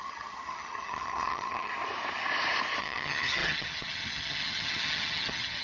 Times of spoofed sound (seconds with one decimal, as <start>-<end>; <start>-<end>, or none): 0.0-1.7; 2.8-5.6